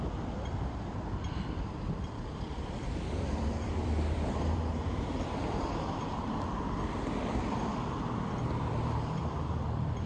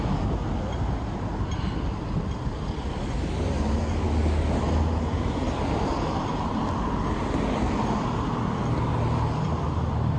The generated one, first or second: first